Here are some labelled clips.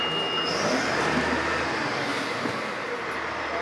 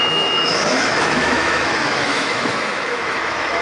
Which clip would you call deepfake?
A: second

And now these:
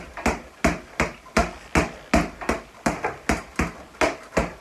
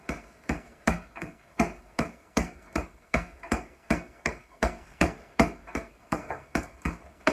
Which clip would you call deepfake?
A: second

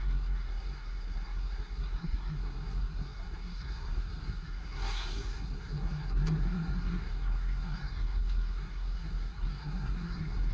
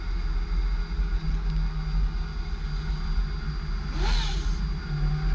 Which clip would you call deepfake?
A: first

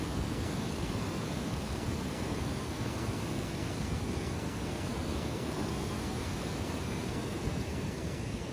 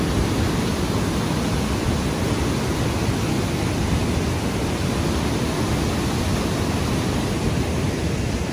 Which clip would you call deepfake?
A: first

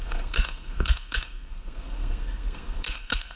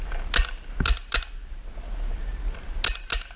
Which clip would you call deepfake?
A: first